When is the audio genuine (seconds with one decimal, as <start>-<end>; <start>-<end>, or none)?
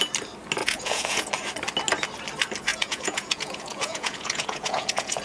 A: 0.0-0.6; 1.3-2.7